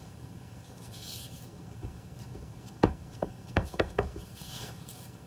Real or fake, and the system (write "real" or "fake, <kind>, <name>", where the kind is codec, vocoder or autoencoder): fake, codec, SNAC